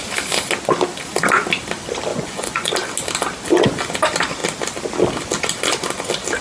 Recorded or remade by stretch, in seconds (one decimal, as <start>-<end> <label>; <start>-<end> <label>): 0.0-2.1 recorded; 2.1-2.7 remade; 2.7-6.4 recorded